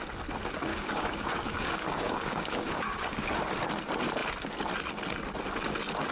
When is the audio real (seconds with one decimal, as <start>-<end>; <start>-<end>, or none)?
0.0-0.7; 3.3-6.1